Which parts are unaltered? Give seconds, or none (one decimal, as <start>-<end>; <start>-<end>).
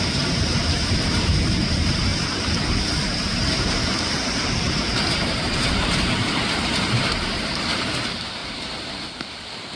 none